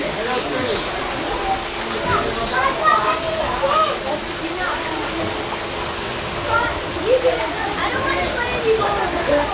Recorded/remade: recorded